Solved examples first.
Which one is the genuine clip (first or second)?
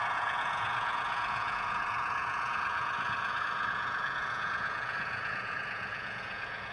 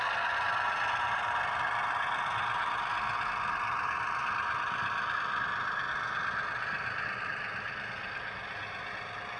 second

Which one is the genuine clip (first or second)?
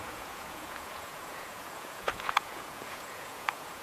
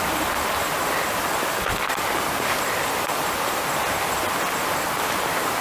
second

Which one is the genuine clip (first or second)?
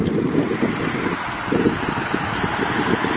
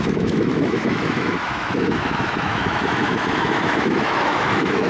first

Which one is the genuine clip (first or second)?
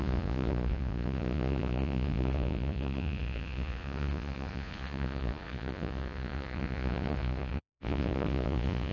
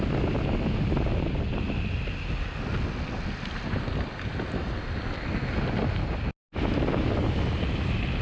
second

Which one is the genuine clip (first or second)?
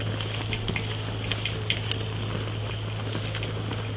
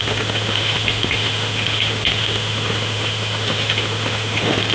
first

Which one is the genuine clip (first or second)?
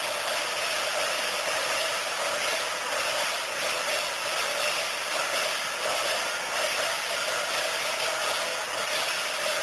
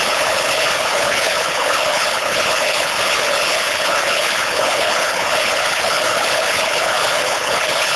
first